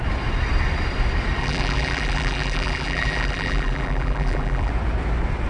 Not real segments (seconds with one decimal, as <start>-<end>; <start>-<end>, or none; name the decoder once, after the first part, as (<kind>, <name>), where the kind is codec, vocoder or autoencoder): 1.4-4.7 (vocoder, BigVGAN v2)